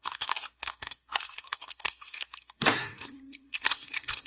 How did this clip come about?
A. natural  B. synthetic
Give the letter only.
B